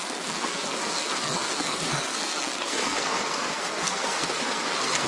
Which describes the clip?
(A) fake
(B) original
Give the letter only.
A